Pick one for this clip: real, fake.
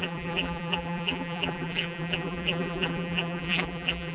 fake